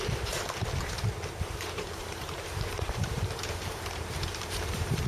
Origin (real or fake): fake